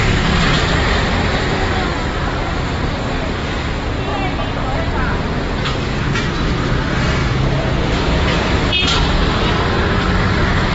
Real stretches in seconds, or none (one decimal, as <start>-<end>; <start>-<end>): 0.0-7.2; 8.5-10.7